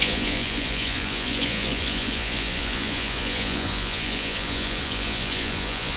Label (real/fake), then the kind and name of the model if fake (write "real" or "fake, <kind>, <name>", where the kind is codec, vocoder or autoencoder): fake, vocoder, Vocos